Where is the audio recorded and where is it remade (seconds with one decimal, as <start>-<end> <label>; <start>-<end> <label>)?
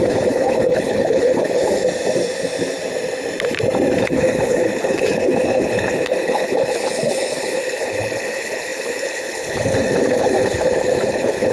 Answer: 0.0-1.8 remade; 1.8-4.0 recorded; 4.0-11.5 remade